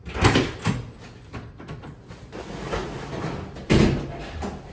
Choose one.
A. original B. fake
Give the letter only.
A